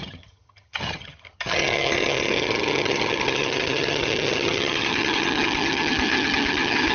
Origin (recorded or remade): remade